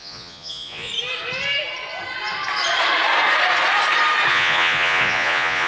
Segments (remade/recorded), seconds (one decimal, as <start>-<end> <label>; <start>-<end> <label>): 0.0-0.9 remade; 0.9-4.3 recorded; 4.3-5.7 remade